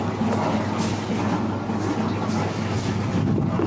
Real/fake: real